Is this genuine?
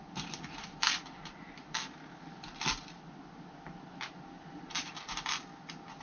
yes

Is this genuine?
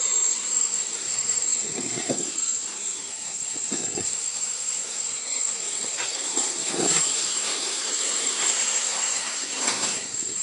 no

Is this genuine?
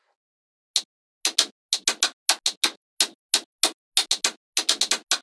yes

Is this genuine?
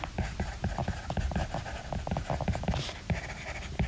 yes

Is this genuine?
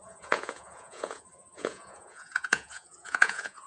no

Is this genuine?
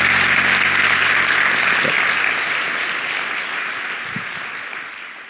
yes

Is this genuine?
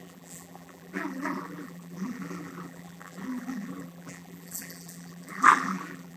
no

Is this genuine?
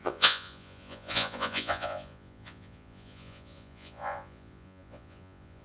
no